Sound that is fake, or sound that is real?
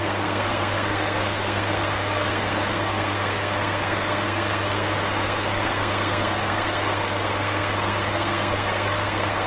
fake